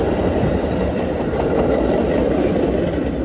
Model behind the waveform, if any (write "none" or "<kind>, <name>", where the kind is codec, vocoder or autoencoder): none